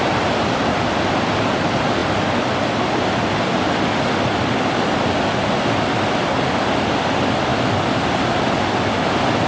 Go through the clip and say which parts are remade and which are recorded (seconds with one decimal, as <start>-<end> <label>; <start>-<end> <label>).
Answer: 0.0-9.5 recorded